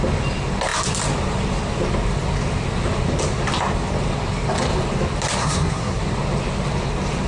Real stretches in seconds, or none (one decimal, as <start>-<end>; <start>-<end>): 0.0-5.4; 6.0-7.3